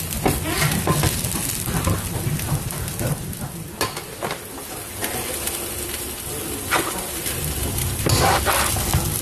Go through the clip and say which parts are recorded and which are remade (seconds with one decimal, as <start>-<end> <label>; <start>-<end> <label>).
0.0-9.2 recorded